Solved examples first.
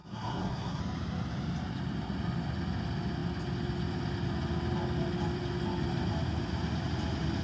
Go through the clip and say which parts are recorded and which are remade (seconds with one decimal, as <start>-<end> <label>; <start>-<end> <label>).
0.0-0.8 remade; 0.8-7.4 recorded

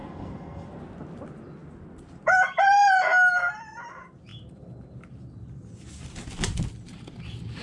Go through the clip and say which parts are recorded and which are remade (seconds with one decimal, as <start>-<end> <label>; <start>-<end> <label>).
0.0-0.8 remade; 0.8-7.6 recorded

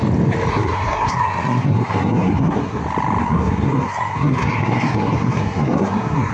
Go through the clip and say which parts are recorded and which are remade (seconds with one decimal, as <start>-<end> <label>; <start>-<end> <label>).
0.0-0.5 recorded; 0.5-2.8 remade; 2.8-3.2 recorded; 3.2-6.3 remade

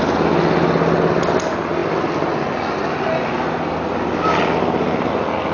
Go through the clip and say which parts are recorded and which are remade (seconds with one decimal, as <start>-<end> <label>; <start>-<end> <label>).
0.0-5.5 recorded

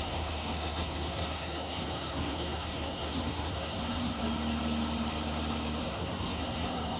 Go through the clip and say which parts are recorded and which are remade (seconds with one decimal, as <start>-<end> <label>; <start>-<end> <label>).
0.0-4.2 remade; 4.2-5.8 recorded; 5.8-7.0 remade

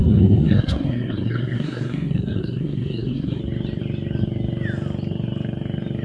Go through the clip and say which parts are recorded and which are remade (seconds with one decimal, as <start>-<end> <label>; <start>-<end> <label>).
0.0-3.4 remade; 3.4-6.0 recorded

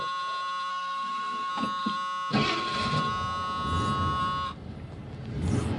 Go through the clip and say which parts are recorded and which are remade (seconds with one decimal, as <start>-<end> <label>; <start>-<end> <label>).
0.0-0.7 recorded; 0.7-1.5 remade; 1.5-5.8 recorded

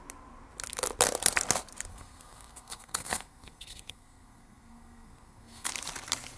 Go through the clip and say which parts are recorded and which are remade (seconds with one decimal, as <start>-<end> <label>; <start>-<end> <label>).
0.0-1.9 recorded; 1.9-5.7 remade; 5.7-6.4 recorded